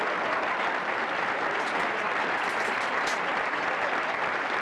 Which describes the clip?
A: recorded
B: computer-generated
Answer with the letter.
A